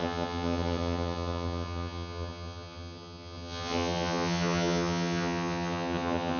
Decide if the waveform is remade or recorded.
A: remade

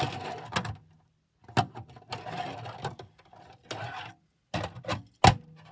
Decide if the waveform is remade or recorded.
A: recorded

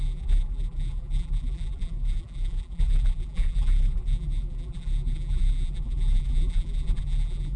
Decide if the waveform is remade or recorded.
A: remade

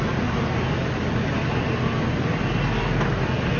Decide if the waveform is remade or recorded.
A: recorded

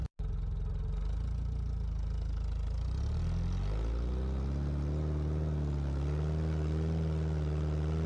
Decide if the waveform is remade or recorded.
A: recorded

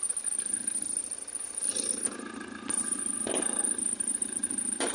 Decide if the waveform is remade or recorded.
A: recorded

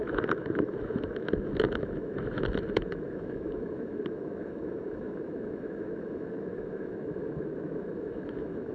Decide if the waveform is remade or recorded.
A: remade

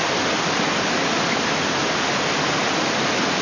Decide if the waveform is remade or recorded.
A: recorded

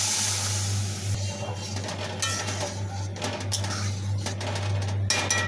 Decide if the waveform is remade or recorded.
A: recorded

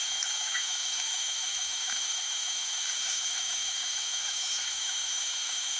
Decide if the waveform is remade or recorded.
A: remade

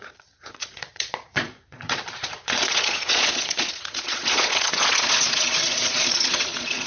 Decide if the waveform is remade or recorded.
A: remade